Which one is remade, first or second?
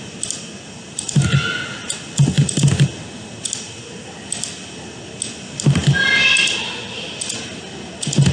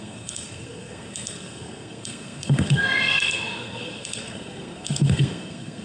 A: second